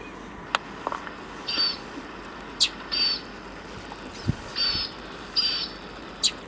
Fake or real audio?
real